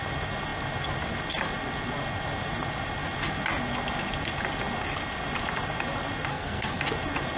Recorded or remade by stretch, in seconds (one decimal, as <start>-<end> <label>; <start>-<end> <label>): 0.0-6.3 recorded; 6.3-6.8 remade; 6.8-7.4 recorded